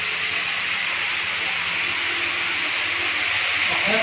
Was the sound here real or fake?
real